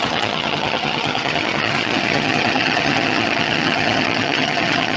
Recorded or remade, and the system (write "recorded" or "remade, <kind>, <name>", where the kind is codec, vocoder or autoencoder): remade, vocoder, HiFi-GAN